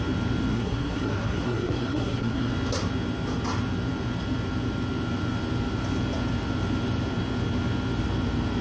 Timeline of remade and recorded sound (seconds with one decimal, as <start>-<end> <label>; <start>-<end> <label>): 0.0-0.5 recorded; 0.5-2.5 remade; 2.5-8.6 recorded